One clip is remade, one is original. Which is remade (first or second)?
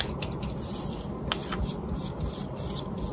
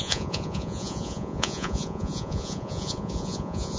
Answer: second